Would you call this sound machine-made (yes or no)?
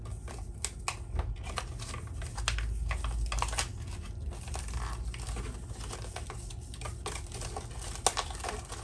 no